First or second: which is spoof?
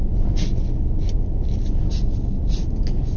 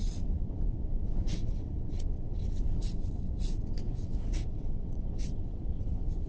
second